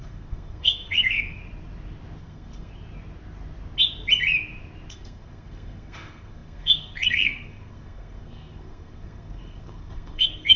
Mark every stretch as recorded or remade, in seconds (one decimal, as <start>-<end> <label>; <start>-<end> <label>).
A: 0.0-1.4 remade; 1.4-2.2 recorded; 2.2-2.7 remade; 2.7-4.9 recorded; 4.9-10.6 remade